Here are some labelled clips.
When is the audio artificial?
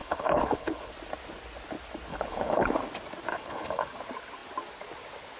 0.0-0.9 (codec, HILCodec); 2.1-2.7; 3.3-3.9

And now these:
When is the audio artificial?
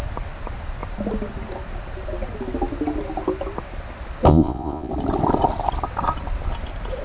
4.3-4.9 (vocoder, Vocos)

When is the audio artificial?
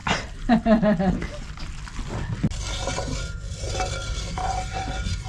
none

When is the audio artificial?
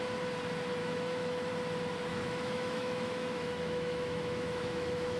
0.8-1.5 (autoencoder, DAC-VAE); 2.1-5.2